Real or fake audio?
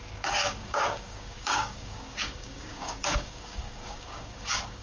fake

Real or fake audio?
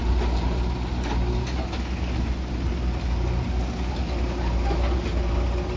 real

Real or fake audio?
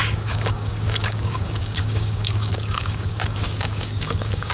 fake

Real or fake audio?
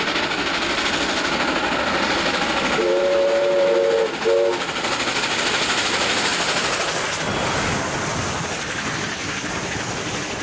real